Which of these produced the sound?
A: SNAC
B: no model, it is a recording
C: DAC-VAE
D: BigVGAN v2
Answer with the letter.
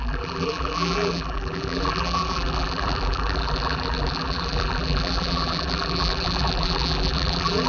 D